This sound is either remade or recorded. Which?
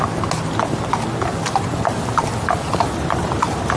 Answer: recorded